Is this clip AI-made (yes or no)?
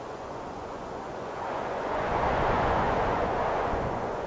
yes